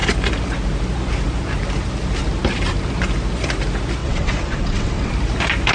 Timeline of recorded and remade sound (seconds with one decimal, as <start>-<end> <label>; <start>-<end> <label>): 0.0-4.0 recorded; 4.0-5.1 remade; 5.1-5.7 recorded

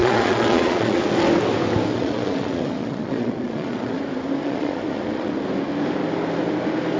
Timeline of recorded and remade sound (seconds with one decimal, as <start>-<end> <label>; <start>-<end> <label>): 0.0-1.0 remade; 1.0-1.9 recorded; 1.9-4.0 remade; 4.0-4.4 recorded; 4.4-5.3 remade; 5.3-7.0 recorded

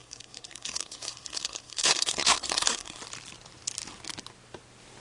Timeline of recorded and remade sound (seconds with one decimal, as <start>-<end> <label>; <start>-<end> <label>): 0.0-3.0 remade; 3.0-5.0 recorded

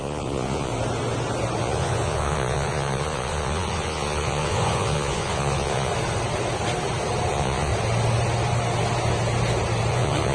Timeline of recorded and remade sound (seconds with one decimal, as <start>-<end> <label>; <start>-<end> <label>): 0.0-0.7 remade; 0.7-1.6 recorded; 1.6-5.9 remade; 5.9-7.3 recorded; 7.3-7.7 remade; 7.7-9.9 recorded; 9.9-10.3 remade

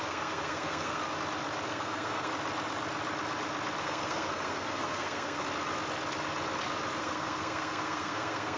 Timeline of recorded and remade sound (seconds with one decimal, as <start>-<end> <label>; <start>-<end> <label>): 0.0-1.0 remade; 1.0-1.7 recorded; 1.7-2.3 remade; 2.3-3.8 recorded; 3.8-5.4 remade; 5.4-7.0 recorded; 7.0-8.6 remade

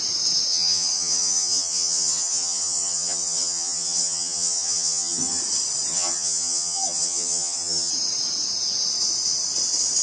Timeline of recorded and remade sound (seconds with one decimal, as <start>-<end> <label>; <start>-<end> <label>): 0.0-0.5 recorded; 0.5-5.4 remade; 5.4-5.9 recorded; 5.9-7.9 remade; 7.9-10.0 recorded

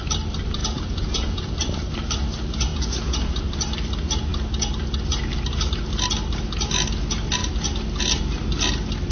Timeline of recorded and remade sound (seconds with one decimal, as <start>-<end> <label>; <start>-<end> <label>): 0.0-0.6 recorded; 0.6-1.6 remade; 1.6-2.7 recorded; 2.7-3.4 remade; 3.4-9.1 recorded

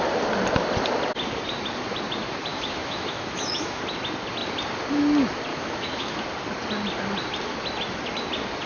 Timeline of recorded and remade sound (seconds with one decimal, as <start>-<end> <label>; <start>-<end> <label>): 0.0-2.5 recorded; 2.5-3.8 remade; 3.8-5.5 recorded; 5.5-6.2 remade; 6.2-8.7 recorded